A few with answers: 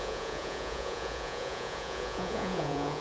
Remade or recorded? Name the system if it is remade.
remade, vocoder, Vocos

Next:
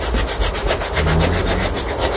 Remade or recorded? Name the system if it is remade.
recorded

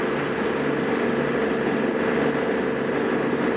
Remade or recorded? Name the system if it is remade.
recorded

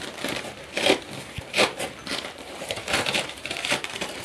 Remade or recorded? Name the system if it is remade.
remade, vocoder, BigVGAN v2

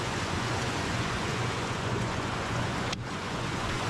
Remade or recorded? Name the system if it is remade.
remade, vocoder, Vocos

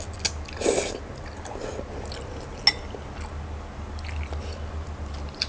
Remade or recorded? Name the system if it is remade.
recorded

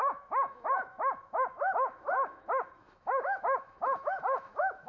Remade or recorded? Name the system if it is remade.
remade, autoencoder, DAC-VAE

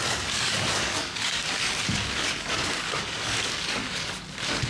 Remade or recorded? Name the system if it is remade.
remade, codec, DAC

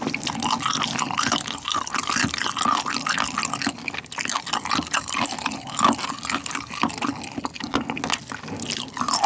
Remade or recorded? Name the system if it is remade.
recorded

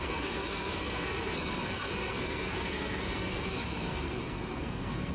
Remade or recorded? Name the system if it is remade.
remade, codec, SNAC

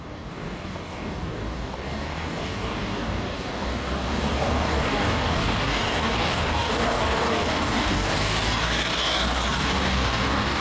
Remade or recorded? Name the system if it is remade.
remade, codec, DAC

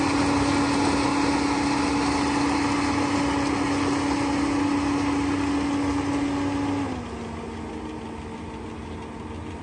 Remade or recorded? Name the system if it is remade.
recorded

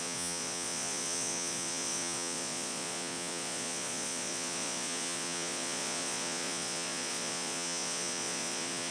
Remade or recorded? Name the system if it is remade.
remade, vocoder, Vocos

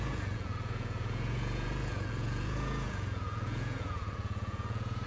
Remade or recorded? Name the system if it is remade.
remade, vocoder, Vocos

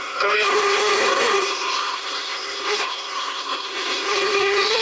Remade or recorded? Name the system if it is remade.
remade, codec, SNAC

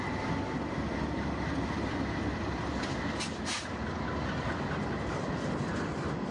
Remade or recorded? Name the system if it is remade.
recorded